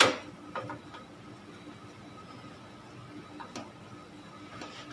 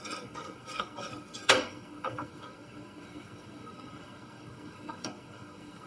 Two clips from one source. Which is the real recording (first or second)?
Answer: first